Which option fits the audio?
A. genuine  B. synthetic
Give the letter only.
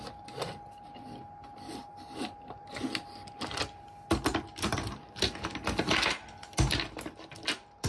A